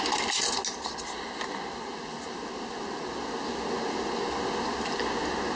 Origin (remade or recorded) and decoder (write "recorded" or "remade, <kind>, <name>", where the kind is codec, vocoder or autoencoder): recorded